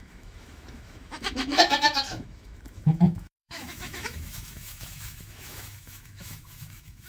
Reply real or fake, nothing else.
fake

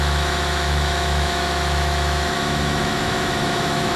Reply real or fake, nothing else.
fake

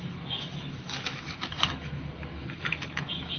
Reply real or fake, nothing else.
fake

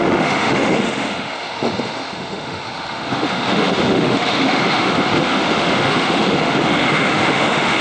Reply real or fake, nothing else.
fake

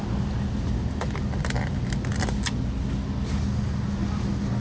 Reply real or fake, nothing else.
real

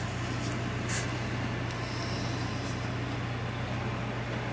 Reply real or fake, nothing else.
real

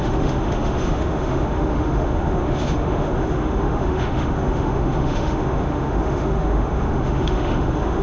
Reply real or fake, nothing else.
fake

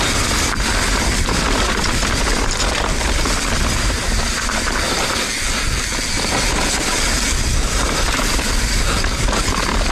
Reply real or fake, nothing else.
real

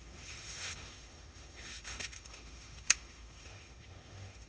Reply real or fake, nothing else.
fake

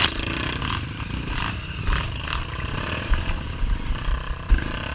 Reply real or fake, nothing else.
real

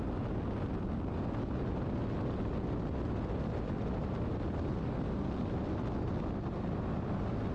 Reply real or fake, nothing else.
real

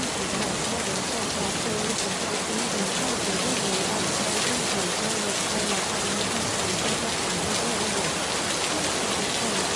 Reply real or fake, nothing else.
real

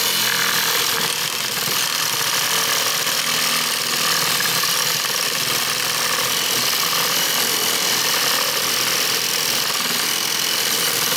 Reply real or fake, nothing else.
real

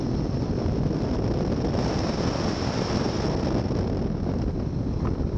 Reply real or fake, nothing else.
real